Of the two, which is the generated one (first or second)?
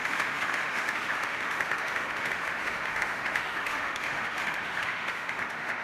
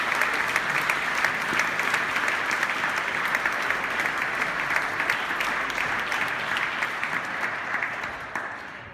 first